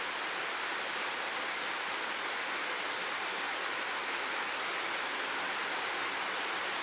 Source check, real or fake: real